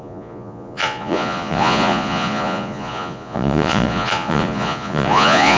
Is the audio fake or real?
fake